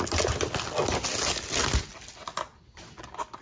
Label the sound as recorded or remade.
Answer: recorded